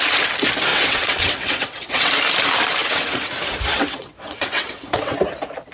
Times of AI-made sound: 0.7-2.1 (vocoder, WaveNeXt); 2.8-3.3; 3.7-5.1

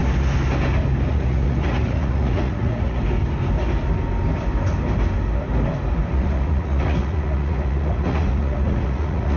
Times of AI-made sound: 1.1-3.0 (vocoder, Vocos); 6.1-9.4

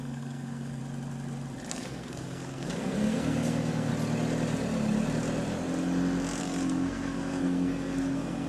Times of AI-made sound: 0.0-0.8 (codec, SNAC); 1.7-3.9; 6.4-8.5

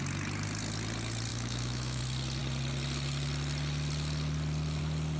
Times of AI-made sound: 1.3-2.0 (autoencoder, DAC-VAE)